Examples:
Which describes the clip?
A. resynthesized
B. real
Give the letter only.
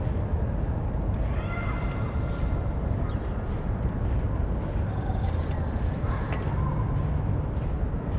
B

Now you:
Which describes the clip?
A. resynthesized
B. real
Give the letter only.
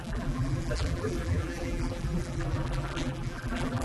A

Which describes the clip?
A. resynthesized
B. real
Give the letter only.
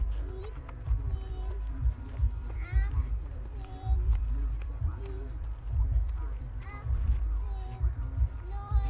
A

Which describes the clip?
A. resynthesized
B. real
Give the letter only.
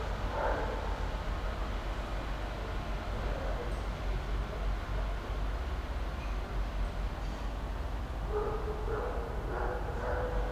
B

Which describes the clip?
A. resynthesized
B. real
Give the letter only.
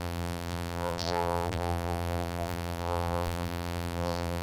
A